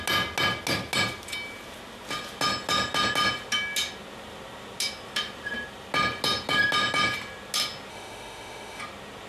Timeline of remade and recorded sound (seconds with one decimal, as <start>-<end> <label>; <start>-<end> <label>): 0.0-7.9 recorded; 7.9-8.8 remade; 8.8-9.3 recorded